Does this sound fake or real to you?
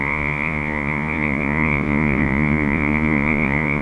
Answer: fake